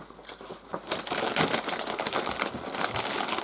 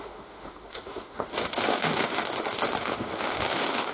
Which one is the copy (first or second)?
second